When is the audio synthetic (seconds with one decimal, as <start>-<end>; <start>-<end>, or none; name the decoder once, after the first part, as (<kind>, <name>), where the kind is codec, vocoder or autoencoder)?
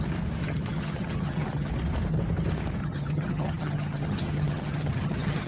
0.4-1.7 (vocoder, HiFi-GAN); 2.8-5.5